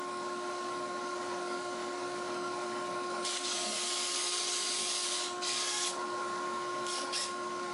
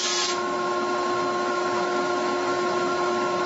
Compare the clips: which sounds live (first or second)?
second